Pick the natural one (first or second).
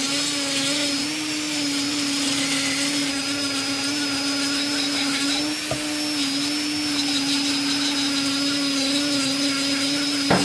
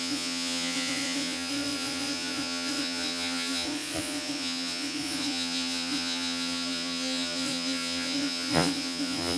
first